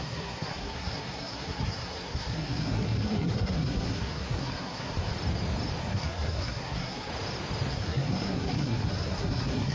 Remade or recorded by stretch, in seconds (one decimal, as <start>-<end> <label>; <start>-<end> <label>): 0.0-5.1 remade; 5.1-5.8 recorded; 5.8-7.1 remade; 7.1-7.7 recorded; 7.7-9.7 remade

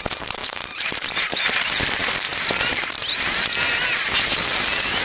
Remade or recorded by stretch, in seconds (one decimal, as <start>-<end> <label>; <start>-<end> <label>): 0.0-2.3 remade; 2.3-5.0 recorded

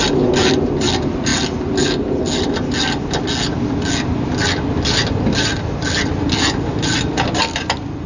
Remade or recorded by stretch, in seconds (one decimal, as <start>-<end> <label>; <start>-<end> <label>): 0.0-8.1 recorded

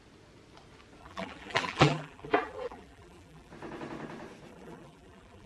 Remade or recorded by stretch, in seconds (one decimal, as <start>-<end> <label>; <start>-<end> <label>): 0.0-1.0 recorded; 1.0-3.5 remade; 3.5-4.5 recorded; 4.5-5.5 remade

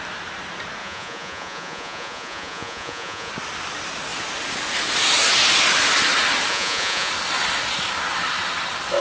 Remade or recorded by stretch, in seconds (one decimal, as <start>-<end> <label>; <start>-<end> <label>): 0.0-0.8 recorded; 0.8-3.3 remade; 3.3-6.5 recorded; 6.5-7.1 remade; 7.1-9.0 recorded

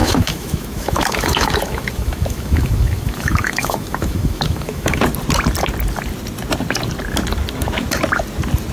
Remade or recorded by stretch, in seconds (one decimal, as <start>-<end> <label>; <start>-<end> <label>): 0.0-5.0 remade; 5.0-8.7 recorded

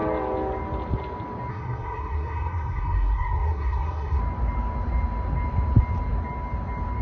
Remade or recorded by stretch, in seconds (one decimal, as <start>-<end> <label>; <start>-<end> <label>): 0.0-1.5 recorded; 1.5-4.2 remade; 4.2-7.0 recorded